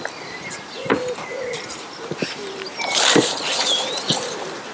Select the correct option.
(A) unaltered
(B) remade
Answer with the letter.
A